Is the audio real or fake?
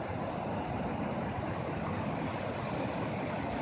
real